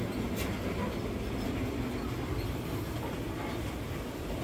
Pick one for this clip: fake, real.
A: real